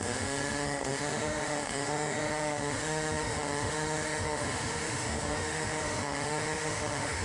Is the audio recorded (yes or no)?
no